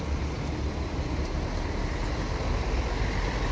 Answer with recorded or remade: recorded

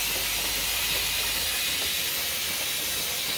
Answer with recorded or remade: recorded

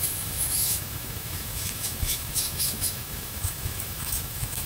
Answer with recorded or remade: remade